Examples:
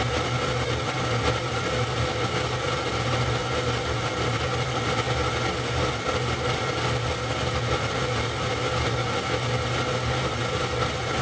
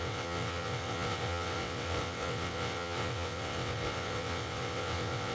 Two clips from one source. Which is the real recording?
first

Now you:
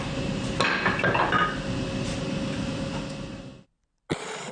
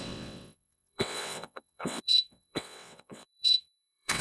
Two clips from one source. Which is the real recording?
first